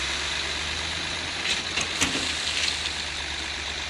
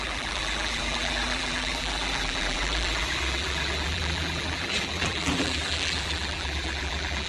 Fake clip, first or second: second